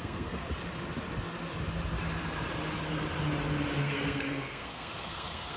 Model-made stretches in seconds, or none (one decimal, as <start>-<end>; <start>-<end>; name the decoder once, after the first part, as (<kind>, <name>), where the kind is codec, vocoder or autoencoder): 0.0-0.4 (codec, SNAC); 3.8-5.6